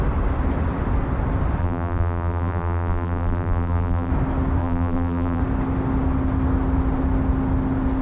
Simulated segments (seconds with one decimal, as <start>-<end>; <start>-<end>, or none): 1.6-4.1; 4.6-5.4